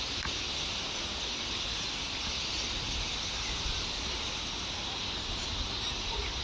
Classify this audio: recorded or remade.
recorded